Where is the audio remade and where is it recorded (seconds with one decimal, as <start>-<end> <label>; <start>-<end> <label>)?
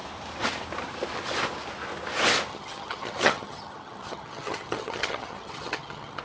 0.0-2.5 recorded; 2.5-6.2 remade